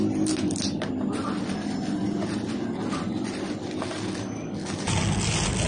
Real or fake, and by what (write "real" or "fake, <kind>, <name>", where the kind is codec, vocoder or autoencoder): real